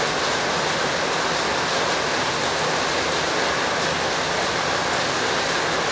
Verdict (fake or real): real